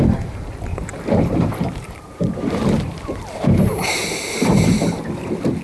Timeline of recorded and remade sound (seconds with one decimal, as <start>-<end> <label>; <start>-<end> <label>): 0.0-0.7 recorded; 0.7-4.1 remade; 4.1-5.6 recorded